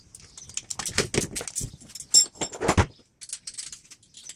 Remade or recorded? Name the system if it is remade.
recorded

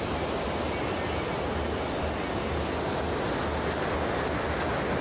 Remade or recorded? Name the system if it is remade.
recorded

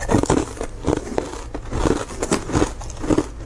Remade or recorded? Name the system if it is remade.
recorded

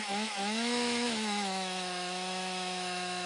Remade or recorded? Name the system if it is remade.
remade, autoencoder, DAC-VAE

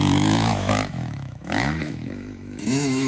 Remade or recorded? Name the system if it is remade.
remade, autoencoder, DAC-VAE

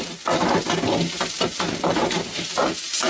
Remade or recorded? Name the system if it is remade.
recorded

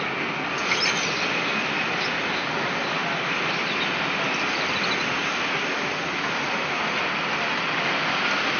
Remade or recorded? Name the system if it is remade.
recorded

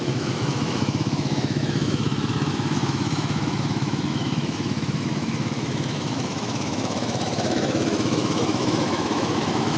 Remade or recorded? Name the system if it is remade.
remade, autoencoder, DAC-VAE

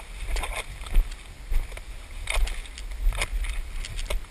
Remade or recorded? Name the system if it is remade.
recorded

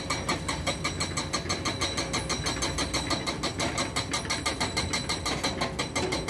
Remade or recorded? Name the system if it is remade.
recorded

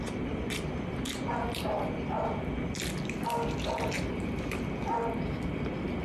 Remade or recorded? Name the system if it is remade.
recorded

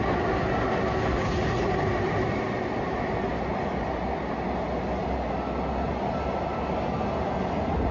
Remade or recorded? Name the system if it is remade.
recorded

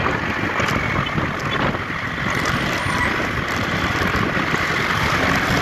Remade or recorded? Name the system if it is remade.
recorded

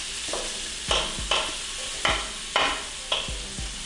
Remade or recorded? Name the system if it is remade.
recorded